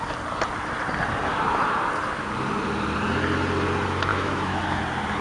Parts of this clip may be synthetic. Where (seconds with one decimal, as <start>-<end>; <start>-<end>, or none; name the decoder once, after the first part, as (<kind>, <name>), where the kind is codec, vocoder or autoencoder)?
4.1-4.8 (autoencoder, DAC-VAE)